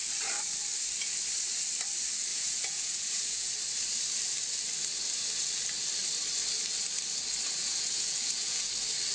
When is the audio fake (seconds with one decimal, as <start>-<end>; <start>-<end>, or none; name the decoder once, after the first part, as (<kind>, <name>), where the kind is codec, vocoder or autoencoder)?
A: 2.3-3.5 (vocoder, Vocos); 7.6-8.7